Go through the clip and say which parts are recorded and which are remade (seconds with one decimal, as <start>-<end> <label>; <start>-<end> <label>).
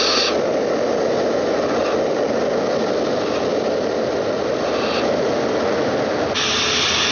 0.0-7.1 recorded